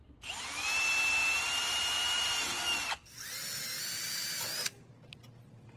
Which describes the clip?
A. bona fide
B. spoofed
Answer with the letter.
A